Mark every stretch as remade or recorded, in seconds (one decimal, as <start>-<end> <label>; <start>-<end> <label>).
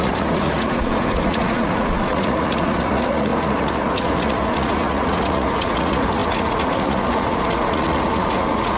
0.0-8.8 remade